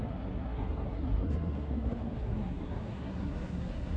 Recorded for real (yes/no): no